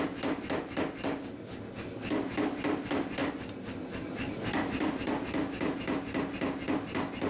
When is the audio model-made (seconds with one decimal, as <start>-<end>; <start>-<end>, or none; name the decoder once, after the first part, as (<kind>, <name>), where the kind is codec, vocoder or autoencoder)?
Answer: none